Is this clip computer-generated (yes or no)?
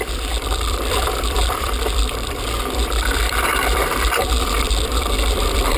yes